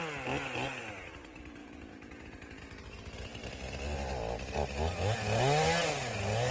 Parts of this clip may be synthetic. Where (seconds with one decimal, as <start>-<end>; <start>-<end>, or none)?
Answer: 1.6-2.6